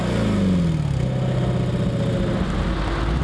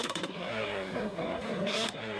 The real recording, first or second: first